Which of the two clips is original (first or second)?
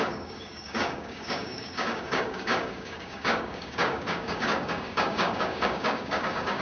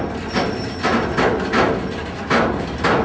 second